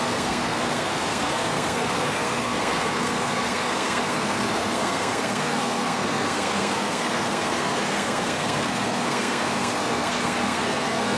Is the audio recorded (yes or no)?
no